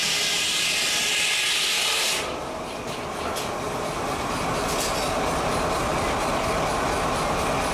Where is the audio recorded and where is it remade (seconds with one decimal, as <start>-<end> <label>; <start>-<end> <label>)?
0.0-7.7 recorded